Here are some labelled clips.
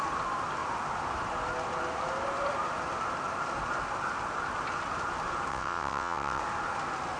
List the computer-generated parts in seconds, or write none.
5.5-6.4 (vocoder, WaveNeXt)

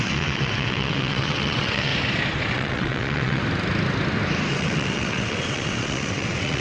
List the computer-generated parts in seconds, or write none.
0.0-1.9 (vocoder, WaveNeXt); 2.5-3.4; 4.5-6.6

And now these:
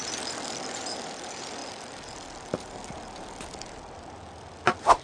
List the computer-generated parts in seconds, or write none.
none

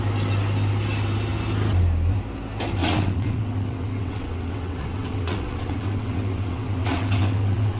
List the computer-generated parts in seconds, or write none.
2.8-7.8 (vocoder, WaveNeXt)

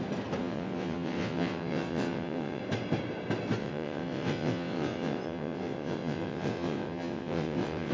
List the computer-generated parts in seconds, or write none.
0.4-2.6 (vocoder, WaveNeXt); 3.6-7.9

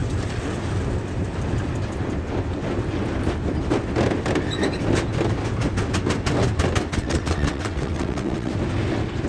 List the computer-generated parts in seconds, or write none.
6.9-8.5 (vocoder, WaveNeXt)

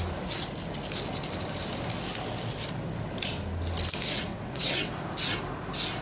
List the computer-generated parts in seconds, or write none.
4.3-4.9 (vocoder, WaveNeXt)